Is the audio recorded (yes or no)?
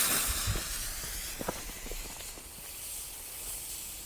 yes